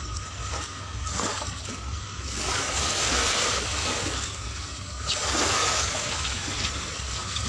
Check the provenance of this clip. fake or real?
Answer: fake